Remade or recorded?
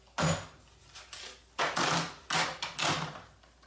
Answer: recorded